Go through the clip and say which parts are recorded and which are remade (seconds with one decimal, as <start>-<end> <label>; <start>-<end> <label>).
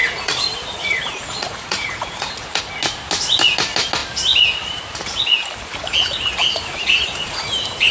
0.0-2.6 remade; 2.6-6.4 recorded; 6.4-7.5 remade; 7.5-7.9 recorded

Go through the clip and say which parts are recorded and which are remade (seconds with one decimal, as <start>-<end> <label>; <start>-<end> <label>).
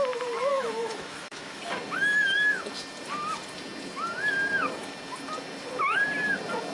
0.0-0.5 recorded; 0.5-1.6 remade; 1.6-6.7 recorded